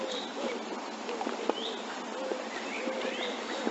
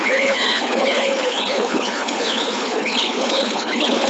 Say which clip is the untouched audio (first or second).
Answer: first